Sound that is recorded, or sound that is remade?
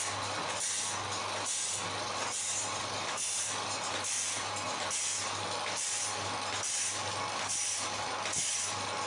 recorded